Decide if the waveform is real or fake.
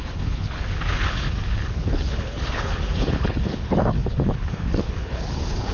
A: fake